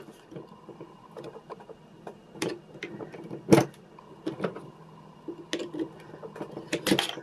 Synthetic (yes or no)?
no